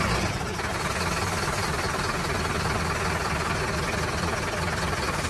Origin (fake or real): real